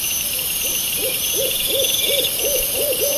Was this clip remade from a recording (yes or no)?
yes